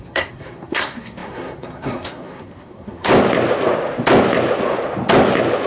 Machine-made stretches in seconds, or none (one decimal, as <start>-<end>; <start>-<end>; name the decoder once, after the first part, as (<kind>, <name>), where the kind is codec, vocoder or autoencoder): 0.0-3.1 (codec, SNAC)